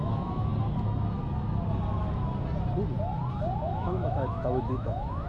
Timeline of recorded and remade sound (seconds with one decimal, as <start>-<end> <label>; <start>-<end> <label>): 0.0-0.5 remade; 0.5-3.7 recorded; 3.7-5.3 remade